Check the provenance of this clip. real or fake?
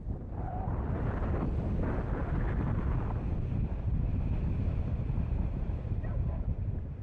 real